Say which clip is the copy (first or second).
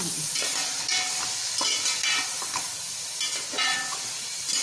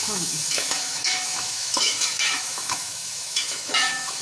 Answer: second